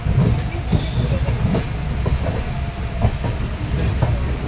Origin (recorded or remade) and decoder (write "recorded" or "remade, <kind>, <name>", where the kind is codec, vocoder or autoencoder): recorded